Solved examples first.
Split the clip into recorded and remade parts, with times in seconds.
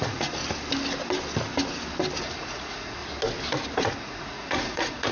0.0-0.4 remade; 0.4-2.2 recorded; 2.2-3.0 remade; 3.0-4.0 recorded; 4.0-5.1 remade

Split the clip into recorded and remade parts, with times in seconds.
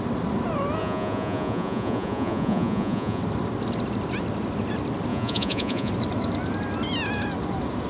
0.0-0.8 recorded; 0.8-3.2 remade; 3.2-5.1 recorded; 5.1-5.9 remade; 5.9-7.9 recorded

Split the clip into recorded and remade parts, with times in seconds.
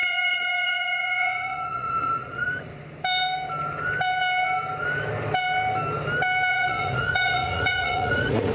0.0-2.7 remade; 2.7-6.5 recorded; 6.5-8.5 remade